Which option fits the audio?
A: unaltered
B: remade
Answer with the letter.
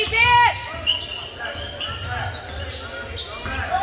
A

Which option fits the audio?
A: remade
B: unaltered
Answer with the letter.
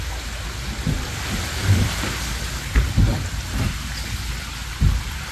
B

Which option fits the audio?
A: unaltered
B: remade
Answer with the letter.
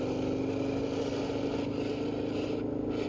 A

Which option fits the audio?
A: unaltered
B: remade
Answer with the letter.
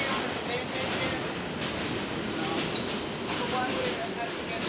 A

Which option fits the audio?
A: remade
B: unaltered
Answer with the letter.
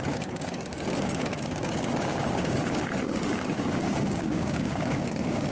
A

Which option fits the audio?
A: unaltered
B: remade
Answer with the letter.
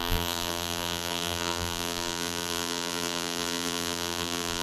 B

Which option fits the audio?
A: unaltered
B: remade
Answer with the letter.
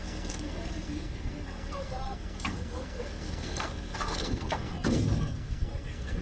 B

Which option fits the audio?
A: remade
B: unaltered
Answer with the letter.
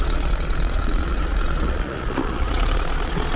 A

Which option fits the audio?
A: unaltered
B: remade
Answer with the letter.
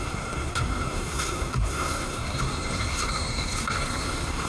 B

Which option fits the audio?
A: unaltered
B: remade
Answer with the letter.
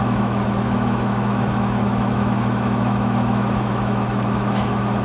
B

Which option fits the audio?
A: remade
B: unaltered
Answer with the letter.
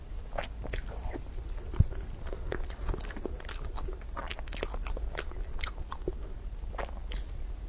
B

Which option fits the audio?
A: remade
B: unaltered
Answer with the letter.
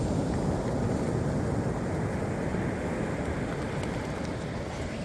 B